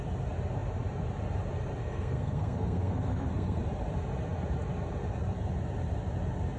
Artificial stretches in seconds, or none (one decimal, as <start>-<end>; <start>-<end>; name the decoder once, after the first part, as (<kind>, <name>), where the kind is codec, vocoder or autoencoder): 1.8-3.6 (codec, SNAC)